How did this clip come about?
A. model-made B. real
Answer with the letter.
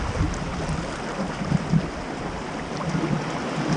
B